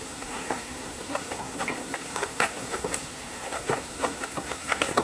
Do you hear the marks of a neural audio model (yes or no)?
yes